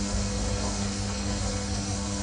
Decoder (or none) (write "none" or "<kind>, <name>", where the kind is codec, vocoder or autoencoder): codec, SNAC